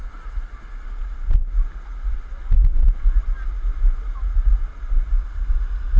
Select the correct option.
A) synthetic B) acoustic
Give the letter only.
B